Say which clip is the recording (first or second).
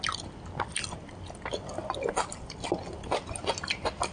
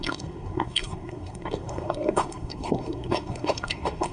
first